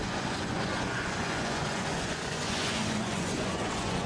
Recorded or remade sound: remade